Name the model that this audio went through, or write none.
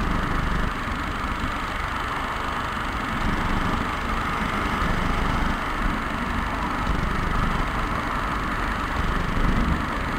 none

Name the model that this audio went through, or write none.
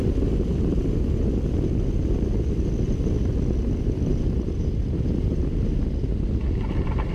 none